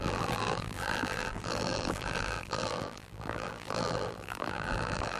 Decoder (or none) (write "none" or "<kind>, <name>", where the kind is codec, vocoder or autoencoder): vocoder, BigVGAN v2